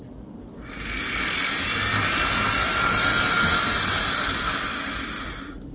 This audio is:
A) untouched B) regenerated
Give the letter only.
A